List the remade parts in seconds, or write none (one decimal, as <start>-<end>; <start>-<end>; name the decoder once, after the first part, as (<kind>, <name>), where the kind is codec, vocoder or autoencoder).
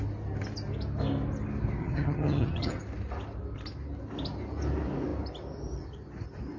1.8-2.7 (vocoder, HiFi-GAN)